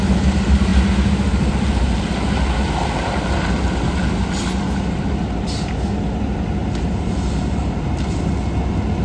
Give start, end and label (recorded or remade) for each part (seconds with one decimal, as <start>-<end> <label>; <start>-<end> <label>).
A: 0.0-9.0 recorded